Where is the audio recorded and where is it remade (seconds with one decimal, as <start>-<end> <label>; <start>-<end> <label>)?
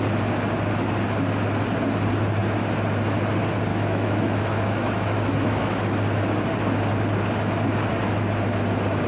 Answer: 0.0-3.7 recorded; 3.7-5.8 remade; 5.8-9.1 recorded